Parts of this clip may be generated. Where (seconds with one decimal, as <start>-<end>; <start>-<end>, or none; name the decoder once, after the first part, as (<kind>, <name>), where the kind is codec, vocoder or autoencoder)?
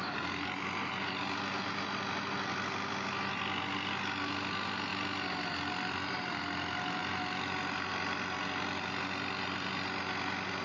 none